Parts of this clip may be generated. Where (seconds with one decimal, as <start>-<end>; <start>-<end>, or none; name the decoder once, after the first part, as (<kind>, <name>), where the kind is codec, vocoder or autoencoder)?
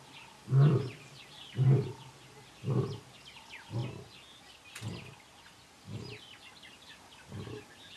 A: 0.4-2.9 (vocoder, BigVGAN v2)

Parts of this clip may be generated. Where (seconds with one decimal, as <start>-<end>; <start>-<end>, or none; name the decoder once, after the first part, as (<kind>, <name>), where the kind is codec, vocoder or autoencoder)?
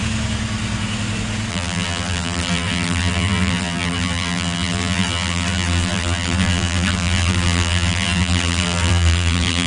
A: 1.5-9.7 (vocoder, BigVGAN v2)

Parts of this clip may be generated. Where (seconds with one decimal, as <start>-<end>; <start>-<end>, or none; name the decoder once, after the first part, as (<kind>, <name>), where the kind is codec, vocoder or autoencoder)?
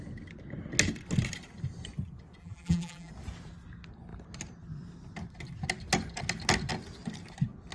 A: 2.4-3.1 (vocoder, BigVGAN v2)